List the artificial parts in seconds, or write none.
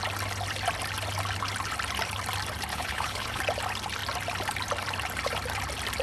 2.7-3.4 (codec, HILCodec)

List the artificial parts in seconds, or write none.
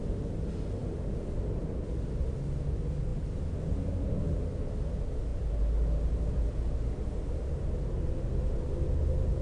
none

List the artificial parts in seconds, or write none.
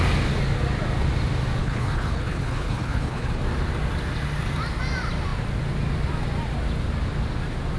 1.6-3.4 (codec, HILCodec)